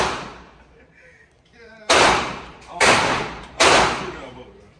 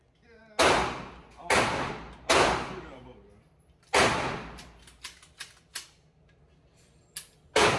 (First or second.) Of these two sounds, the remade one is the first